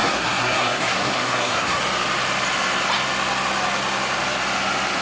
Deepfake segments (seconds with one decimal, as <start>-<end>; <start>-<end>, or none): 0.0-1.8